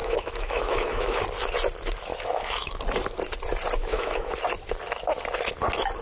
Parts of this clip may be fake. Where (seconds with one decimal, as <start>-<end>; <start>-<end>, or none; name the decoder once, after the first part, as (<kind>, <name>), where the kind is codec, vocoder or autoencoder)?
0.0-1.2 (autoencoder, DAC-VAE); 2.1-2.8; 3.8-4.3